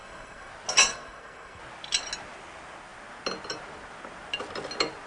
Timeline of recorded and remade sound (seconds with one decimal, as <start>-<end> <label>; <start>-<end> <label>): 0.0-0.5 remade; 0.5-0.9 recorded; 0.9-1.6 remade; 1.6-5.1 recorded